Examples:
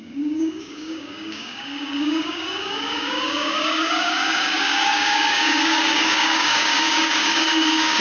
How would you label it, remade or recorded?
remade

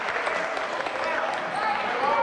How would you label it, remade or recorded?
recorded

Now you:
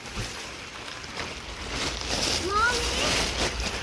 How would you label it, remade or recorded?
remade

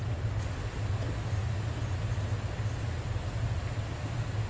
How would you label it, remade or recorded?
recorded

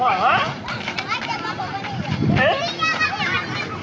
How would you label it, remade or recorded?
recorded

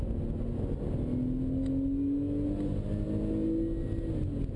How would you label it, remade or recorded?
recorded